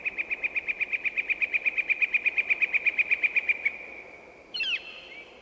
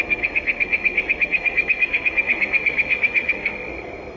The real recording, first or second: first